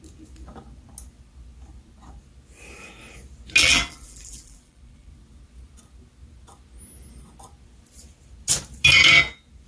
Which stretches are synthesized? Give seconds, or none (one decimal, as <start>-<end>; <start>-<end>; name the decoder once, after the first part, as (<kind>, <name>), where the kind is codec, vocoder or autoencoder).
3.6-5.1 (vocoder, BigVGAN v2)